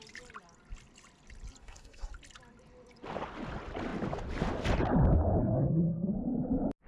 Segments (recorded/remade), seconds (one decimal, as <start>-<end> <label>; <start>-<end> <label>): 0.0-1.6 recorded; 1.6-2.1 remade; 2.1-5.4 recorded; 5.4-6.1 remade; 6.1-6.9 recorded